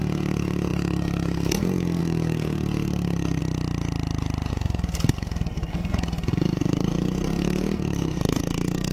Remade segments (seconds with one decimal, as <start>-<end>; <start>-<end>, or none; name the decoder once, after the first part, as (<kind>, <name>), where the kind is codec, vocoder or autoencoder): 0.0-3.4 (codec, SNAC); 4.5-8.9